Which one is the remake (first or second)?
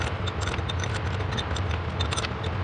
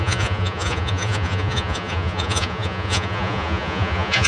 second